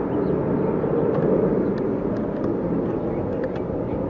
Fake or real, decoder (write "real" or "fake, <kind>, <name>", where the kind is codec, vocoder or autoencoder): real